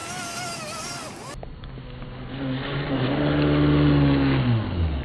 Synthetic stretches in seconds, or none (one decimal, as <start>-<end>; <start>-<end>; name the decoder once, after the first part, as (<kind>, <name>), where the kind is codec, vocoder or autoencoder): none